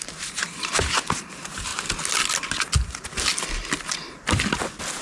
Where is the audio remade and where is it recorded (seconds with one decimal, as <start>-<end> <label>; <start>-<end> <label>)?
0.0-1.7 remade; 1.7-5.0 recorded